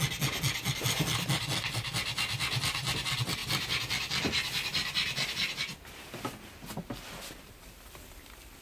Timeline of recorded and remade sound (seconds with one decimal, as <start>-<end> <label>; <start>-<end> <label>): 0.0-8.6 recorded